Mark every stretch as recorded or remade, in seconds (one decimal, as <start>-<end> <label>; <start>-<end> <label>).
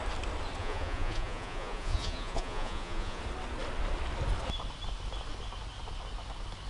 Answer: 0.0-0.6 recorded; 0.6-3.2 remade; 3.2-6.7 recorded